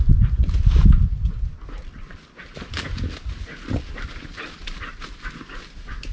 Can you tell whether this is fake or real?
real